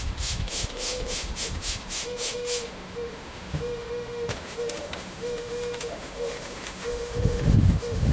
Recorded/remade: remade